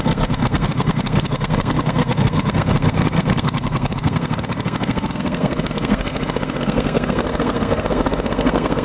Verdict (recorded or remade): remade